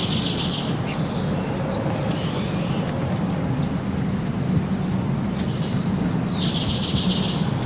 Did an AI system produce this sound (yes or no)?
no